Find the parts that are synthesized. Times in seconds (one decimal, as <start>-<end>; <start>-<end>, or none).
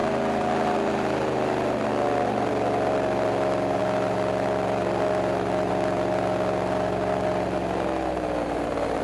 none